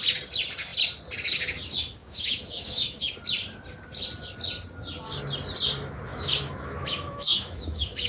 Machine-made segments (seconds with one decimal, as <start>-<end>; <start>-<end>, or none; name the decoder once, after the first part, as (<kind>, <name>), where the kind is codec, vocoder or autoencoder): 2.0-3.1 (autoencoder, DAC-VAE); 6.1-8.1